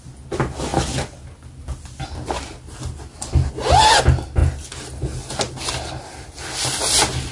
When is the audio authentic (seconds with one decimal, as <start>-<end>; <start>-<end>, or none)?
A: 0.0-7.3